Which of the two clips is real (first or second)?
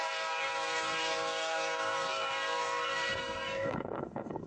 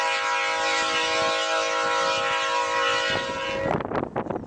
second